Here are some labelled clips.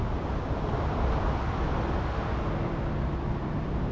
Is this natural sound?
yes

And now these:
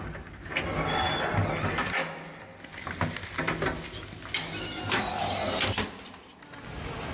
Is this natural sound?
yes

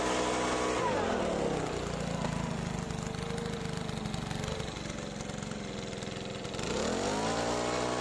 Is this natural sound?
yes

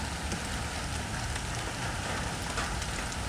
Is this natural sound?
yes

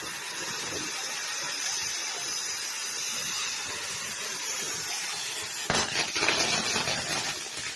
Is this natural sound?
yes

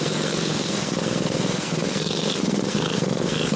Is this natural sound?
no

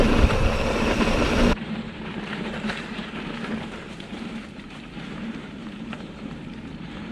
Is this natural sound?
no